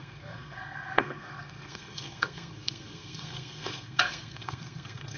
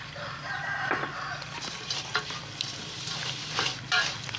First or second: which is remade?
first